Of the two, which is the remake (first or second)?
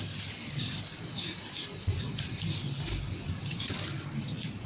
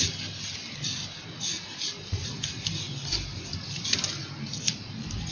first